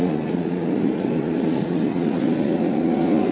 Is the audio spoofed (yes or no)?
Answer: yes